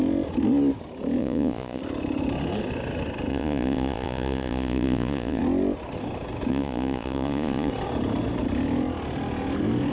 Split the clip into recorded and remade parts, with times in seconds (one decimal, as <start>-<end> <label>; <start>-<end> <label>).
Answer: 0.0-1.2 recorded; 1.2-1.8 remade; 1.8-3.3 recorded; 3.3-5.4 remade; 5.4-6.5 recorded; 6.5-7.7 remade; 7.7-9.9 recorded

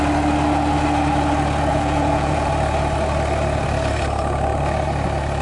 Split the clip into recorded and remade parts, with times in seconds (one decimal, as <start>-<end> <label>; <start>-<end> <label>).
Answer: 0.0-1.7 recorded; 1.7-2.5 remade; 2.5-5.4 recorded